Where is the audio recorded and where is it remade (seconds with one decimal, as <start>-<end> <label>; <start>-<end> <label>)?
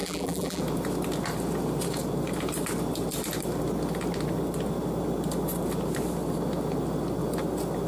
0.0-0.6 remade; 0.6-7.9 recorded